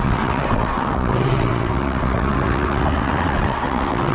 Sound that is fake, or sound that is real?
fake